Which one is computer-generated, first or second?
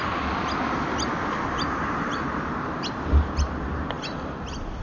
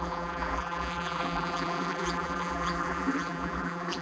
second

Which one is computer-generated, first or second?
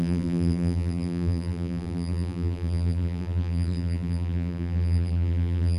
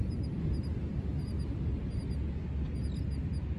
first